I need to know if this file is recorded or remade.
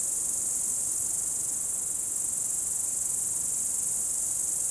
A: recorded